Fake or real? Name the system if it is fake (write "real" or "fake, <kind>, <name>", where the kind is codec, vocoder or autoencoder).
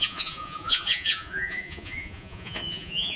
fake, vocoder, Vocos